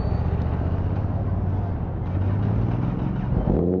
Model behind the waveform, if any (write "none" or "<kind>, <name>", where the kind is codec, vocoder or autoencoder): none